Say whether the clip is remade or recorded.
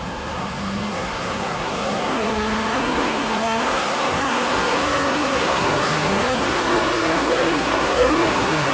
remade